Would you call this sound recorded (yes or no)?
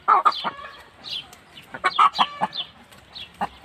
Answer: yes